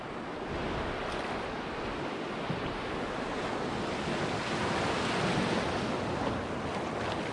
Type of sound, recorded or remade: recorded